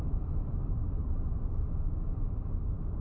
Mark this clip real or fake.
real